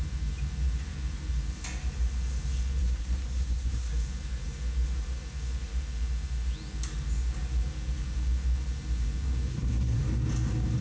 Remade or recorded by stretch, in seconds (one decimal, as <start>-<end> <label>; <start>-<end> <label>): 0.0-2.8 recorded; 2.8-3.9 remade; 3.9-9.5 recorded; 9.5-10.0 remade; 10.0-10.8 recorded